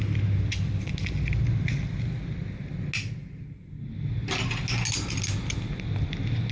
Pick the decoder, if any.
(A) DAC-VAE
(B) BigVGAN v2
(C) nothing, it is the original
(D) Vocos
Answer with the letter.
C